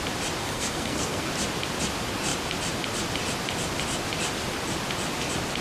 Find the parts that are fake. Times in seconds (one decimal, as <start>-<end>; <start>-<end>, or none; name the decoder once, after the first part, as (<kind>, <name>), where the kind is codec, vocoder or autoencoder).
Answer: 0.4-1.3 (codec, SNAC)